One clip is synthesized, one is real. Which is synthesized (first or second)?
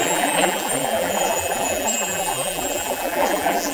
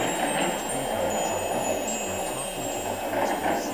first